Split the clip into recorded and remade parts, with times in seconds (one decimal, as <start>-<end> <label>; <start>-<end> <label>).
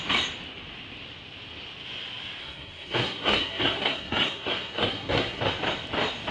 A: 0.0-2.4 recorded; 2.4-5.4 remade; 5.4-6.3 recorded